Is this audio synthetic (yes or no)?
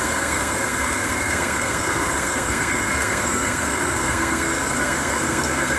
yes